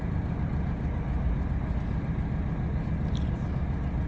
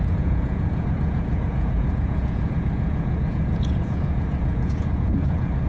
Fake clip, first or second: second